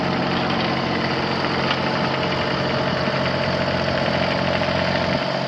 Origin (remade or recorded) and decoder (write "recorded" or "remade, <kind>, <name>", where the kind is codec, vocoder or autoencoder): recorded